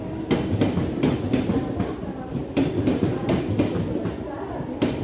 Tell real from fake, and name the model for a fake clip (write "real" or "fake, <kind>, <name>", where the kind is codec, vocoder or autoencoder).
real